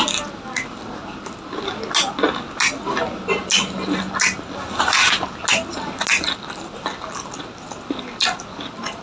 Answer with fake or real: real